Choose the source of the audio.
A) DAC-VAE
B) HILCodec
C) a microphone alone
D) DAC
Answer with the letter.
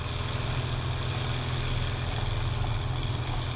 C